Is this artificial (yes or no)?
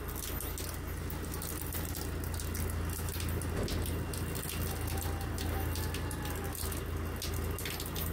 no